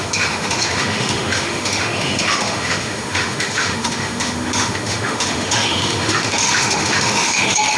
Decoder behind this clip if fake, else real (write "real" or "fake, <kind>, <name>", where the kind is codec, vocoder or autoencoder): fake, autoencoder, DAC-VAE